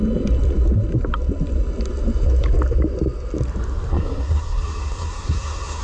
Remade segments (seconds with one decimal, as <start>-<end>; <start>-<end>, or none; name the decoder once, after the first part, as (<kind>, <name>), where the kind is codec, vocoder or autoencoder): 3.9-5.8 (codec, SNAC)